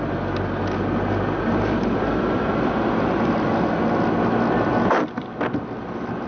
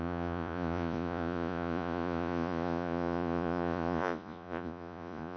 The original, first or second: first